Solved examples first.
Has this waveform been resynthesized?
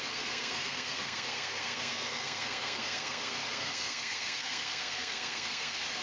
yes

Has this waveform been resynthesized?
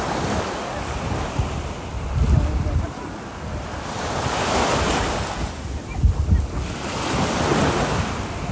no